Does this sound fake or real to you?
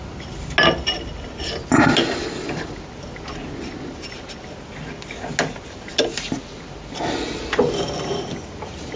real